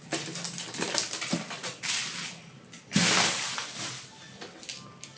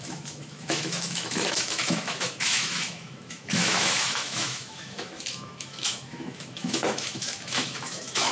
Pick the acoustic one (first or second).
first